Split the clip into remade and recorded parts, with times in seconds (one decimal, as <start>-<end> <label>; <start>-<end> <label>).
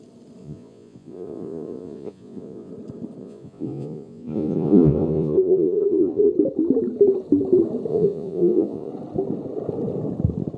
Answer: 0.0-0.4 recorded; 0.4-2.7 remade; 2.7-3.2 recorded; 3.2-6.3 remade; 6.3-7.9 recorded; 7.9-8.9 remade; 8.9-10.6 recorded